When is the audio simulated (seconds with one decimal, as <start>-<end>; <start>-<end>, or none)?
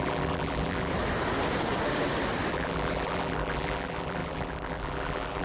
0.0-0.9; 2.5-5.4